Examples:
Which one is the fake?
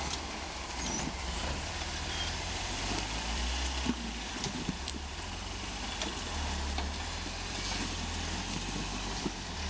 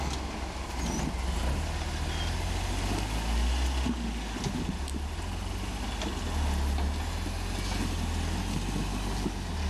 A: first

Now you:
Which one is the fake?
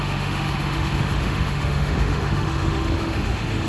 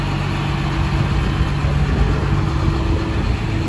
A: first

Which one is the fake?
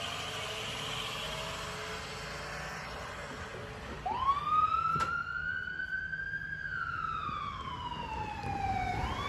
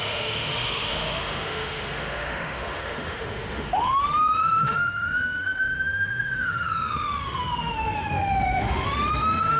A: second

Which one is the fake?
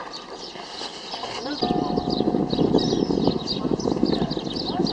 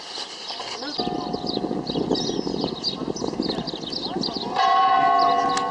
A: first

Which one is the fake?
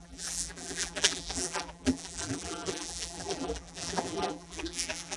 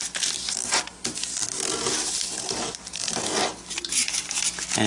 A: first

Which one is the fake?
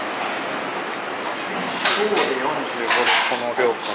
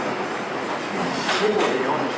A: second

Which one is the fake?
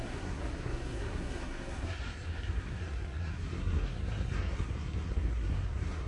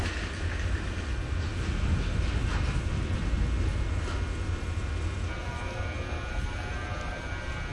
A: first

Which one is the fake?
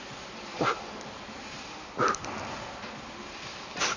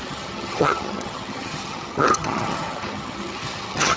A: second